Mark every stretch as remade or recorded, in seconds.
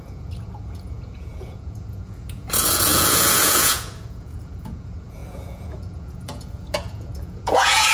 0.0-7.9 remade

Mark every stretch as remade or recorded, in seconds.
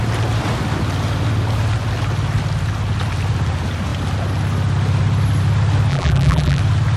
0.0-5.9 recorded; 5.9-6.6 remade; 6.6-7.0 recorded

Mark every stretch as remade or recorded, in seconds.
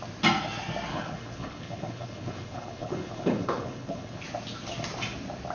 0.0-0.9 recorded; 0.9-4.2 remade; 4.2-5.5 recorded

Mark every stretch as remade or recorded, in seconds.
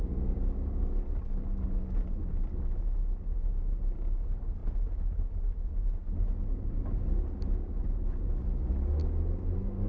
0.0-9.9 recorded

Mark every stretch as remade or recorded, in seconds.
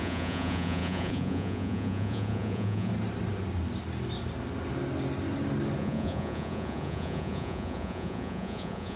0.0-2.9 remade; 2.9-5.8 recorded; 5.8-9.0 remade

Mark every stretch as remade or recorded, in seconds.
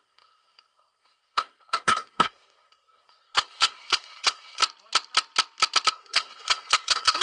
0.0-4.6 remade; 4.6-5.9 recorded; 5.9-7.2 remade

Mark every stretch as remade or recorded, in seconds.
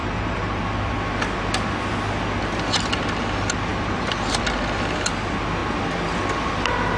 0.0-0.6 remade; 0.6-3.7 recorded; 3.7-4.4 remade; 4.4-7.0 recorded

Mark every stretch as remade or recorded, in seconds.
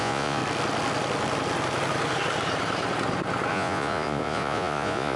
0.0-0.4 remade; 0.4-3.5 recorded; 3.5-5.2 remade